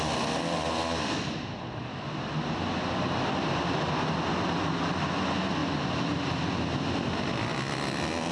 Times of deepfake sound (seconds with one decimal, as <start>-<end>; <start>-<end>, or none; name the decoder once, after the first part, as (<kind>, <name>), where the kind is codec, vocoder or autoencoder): none